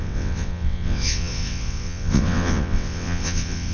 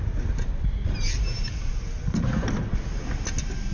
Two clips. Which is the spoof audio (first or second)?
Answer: first